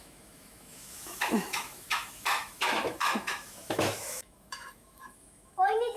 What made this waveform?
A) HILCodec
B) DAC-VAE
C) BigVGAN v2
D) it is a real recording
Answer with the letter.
B